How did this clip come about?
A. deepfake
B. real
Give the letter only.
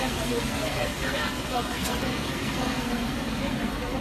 A